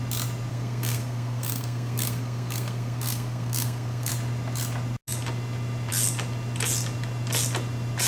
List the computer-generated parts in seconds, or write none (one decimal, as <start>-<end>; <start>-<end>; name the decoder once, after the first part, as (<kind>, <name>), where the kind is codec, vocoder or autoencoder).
0.5-4.1 (codec, SNAC)